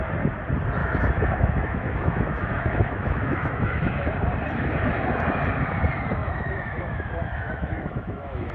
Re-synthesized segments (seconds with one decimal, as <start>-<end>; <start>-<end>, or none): 0.8-4.1; 6.2-8.5